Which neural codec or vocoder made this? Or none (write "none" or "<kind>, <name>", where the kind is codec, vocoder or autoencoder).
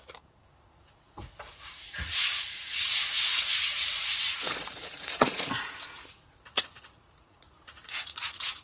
vocoder, Vocos